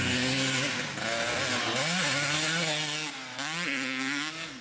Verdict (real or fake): real